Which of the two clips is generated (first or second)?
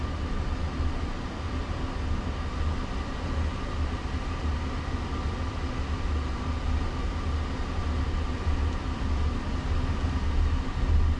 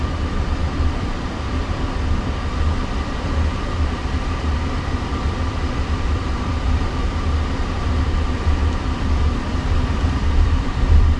second